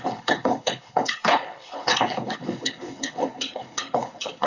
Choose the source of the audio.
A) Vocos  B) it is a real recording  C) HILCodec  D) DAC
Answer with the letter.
C